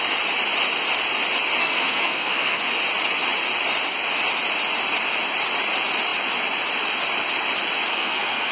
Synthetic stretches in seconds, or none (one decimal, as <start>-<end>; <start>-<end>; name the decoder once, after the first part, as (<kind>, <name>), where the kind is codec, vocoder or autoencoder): 1.6-2.6 (codec, SNAC); 7.9-8.5